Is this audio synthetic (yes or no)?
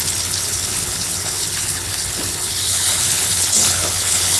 yes